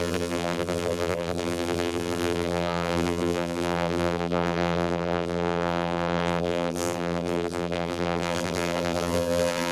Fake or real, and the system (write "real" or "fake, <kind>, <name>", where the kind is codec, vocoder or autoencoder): fake, vocoder, BigVGAN v2